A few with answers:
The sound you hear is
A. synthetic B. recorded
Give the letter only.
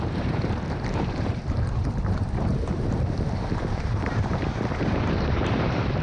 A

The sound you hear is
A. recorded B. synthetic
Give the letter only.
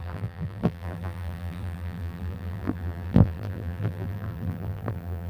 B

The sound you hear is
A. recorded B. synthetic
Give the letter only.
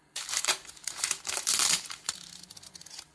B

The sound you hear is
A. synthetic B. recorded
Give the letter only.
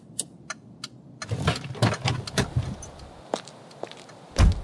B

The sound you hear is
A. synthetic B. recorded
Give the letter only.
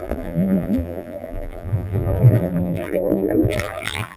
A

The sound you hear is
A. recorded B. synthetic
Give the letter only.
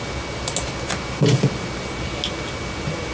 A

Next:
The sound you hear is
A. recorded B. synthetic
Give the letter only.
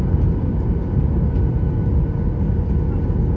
A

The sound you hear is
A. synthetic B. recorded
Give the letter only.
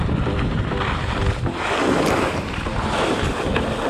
A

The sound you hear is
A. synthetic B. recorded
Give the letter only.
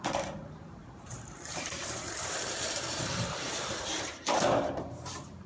A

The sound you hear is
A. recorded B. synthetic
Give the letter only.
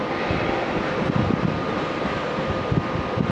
A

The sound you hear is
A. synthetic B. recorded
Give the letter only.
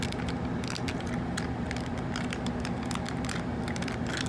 B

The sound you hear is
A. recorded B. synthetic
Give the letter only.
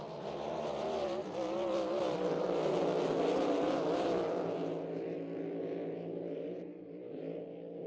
A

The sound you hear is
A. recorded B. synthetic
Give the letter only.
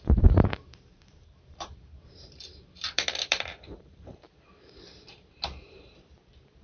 B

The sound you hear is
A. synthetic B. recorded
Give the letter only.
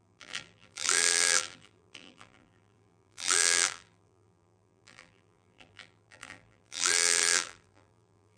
A